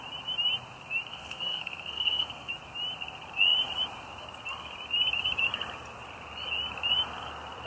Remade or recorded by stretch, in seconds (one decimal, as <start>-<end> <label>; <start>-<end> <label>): 0.0-1.1 recorded; 1.1-2.5 remade; 2.5-7.7 recorded